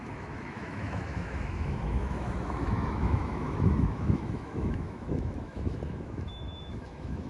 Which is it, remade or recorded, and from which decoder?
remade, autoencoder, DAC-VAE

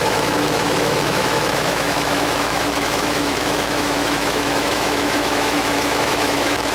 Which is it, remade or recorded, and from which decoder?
remade, autoencoder, DAC-VAE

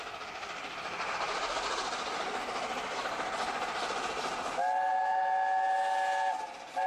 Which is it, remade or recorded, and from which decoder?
recorded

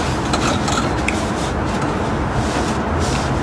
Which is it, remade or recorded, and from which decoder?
recorded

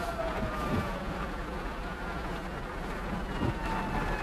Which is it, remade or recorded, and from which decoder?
recorded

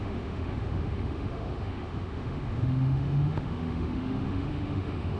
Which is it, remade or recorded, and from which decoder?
remade, autoencoder, DAC-VAE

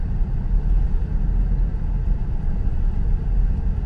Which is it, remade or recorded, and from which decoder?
recorded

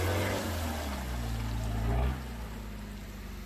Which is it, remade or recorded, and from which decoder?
recorded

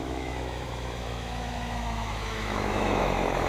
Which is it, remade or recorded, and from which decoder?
remade, autoencoder, DAC-VAE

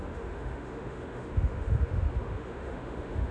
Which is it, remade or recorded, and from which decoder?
remade, autoencoder, DAC-VAE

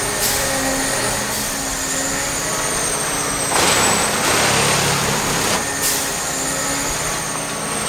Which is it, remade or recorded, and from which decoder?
recorded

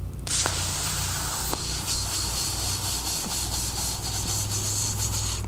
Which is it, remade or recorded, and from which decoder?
recorded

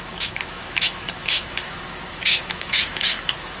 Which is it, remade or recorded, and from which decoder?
remade, autoencoder, DAC-VAE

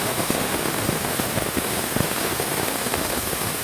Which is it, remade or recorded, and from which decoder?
remade, autoencoder, DAC-VAE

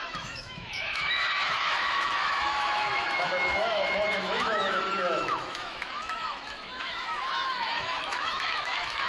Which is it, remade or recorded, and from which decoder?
remade, autoencoder, DAC-VAE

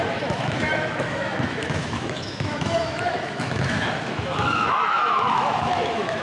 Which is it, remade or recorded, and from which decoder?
remade, autoencoder, DAC-VAE